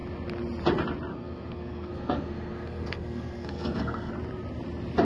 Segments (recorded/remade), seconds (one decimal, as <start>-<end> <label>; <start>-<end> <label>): 0.0-1.1 recorded; 1.1-4.1 remade; 4.1-5.0 recorded